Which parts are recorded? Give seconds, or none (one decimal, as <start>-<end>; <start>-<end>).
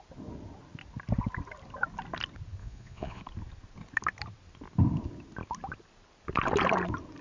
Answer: 0.0-2.6; 3.2-7.2